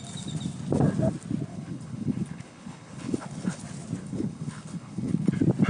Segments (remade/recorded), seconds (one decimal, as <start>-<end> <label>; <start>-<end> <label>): 0.0-1.5 recorded; 1.5-3.6 remade; 3.6-4.0 recorded; 4.0-5.3 remade; 5.3-5.7 recorded